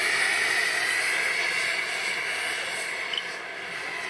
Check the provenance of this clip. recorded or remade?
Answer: recorded